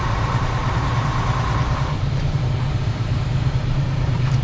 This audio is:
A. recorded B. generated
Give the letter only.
B